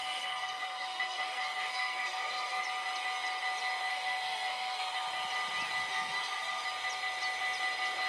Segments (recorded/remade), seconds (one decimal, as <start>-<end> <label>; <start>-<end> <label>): 0.0-2.6 remade; 2.6-3.9 recorded; 3.9-4.9 remade; 4.9-5.9 recorded; 5.9-6.6 remade; 6.6-8.1 recorded